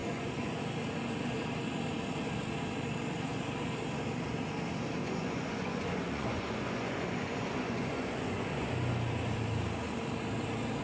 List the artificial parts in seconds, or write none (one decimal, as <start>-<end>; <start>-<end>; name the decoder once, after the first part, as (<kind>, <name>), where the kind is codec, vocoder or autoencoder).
0.0-0.6 (vocoder, Vocos); 5.0-8.7